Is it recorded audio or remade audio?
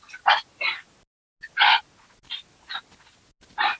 recorded